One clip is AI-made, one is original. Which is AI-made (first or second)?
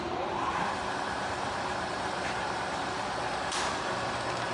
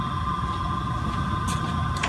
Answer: first